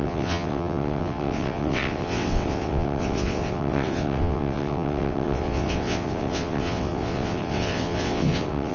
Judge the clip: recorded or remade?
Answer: remade